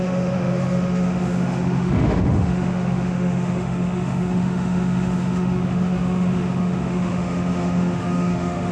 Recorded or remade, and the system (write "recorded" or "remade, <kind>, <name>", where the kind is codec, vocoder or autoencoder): remade, autoencoder, DAC-VAE